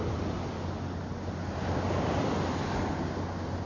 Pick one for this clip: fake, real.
real